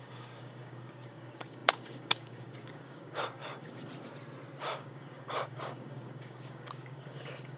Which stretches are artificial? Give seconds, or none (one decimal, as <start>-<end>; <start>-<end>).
0.0-3.9; 4.6-7.6